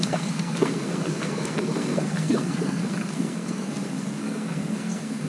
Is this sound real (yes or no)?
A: no